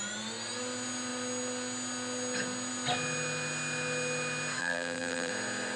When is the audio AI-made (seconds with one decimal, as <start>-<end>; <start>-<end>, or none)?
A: 4.6-5.3